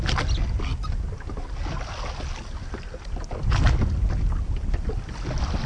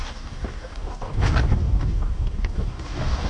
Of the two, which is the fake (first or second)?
second